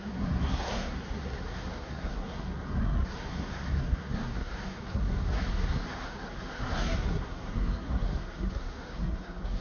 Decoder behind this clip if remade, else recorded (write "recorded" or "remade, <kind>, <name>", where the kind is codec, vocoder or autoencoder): remade, codec, SNAC